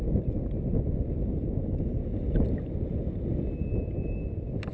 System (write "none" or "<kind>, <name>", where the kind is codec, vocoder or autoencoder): none